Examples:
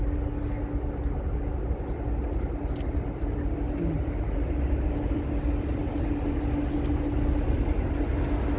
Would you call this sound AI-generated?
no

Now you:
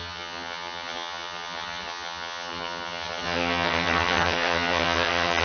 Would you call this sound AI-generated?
yes